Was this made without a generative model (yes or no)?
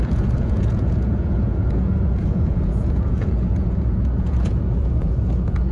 no